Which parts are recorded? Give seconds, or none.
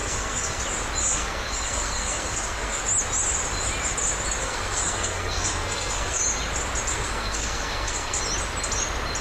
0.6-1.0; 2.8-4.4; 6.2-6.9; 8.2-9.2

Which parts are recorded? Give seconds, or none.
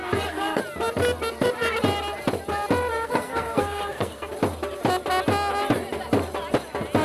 0.6-2.9; 4.3-7.0